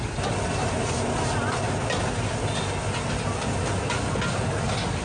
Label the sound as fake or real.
real